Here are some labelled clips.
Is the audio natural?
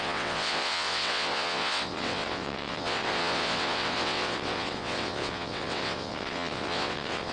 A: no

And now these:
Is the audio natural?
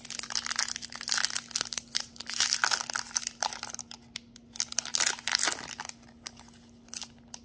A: yes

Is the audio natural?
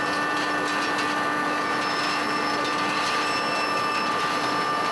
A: yes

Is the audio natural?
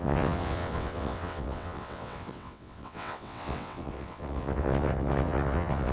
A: no